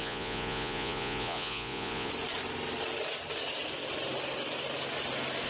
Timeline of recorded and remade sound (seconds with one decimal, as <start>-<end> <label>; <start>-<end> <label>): 0.0-2.1 remade; 2.1-5.5 recorded